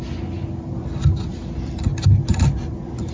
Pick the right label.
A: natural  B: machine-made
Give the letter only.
A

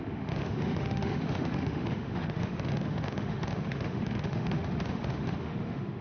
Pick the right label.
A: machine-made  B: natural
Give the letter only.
A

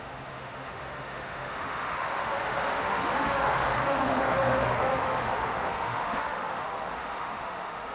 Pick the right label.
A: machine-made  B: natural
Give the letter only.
A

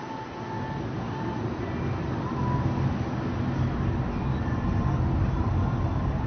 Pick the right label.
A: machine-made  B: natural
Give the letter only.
B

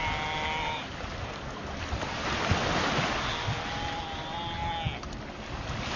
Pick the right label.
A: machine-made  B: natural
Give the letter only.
B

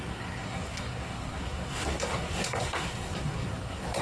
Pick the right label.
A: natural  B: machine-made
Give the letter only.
B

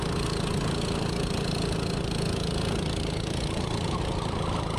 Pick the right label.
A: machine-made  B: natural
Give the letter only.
B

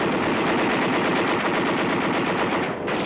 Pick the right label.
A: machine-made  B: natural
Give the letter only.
B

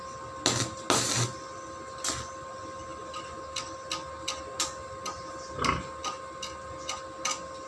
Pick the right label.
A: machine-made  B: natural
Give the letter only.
B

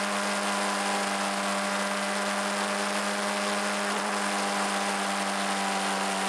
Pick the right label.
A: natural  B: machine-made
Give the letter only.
A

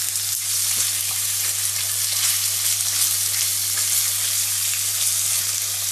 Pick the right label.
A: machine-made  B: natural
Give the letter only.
B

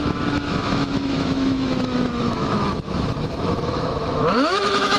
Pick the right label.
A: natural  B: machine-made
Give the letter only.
B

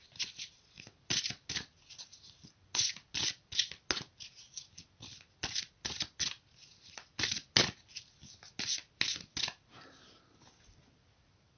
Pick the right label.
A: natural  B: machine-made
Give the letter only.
A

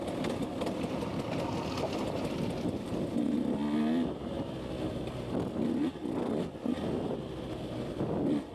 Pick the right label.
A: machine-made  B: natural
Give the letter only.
B